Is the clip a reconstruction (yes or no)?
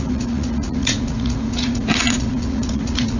yes